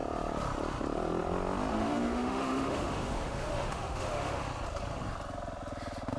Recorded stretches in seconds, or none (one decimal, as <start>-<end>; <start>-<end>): 0.0-1.7; 4.4-6.2